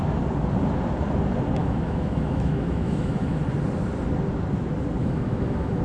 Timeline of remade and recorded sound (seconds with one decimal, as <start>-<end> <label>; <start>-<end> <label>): 0.0-1.6 recorded; 1.6-3.4 remade; 3.4-5.0 recorded; 5.0-5.8 remade